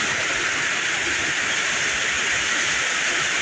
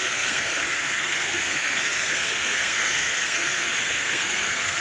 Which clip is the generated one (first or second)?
second